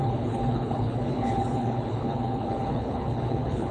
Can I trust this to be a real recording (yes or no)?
no